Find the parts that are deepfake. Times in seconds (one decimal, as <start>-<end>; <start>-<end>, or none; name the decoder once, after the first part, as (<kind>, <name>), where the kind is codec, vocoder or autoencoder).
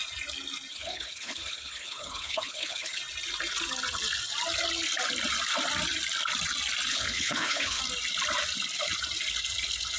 0.7-3.0 (codec, HILCodec); 6.9-7.8